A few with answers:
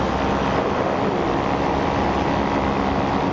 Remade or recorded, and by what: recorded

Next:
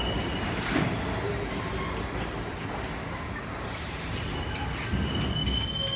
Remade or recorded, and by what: recorded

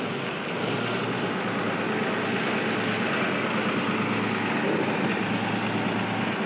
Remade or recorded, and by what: recorded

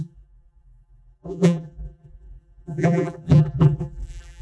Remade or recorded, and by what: remade, vocoder, BigVGAN v2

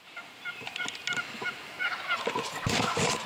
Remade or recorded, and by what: recorded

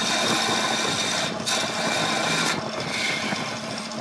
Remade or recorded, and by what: recorded